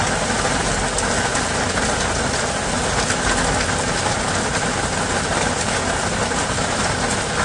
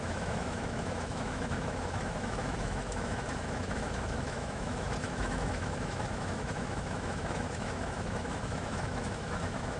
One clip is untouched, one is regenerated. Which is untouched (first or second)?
first